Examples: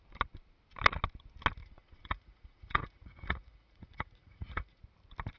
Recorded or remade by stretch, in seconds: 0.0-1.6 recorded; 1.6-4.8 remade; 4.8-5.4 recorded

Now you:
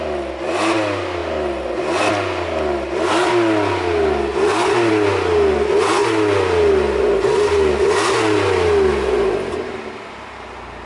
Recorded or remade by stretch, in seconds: 0.0-10.9 recorded